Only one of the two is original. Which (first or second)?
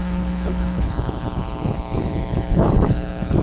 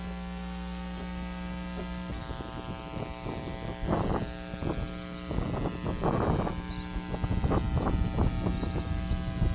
second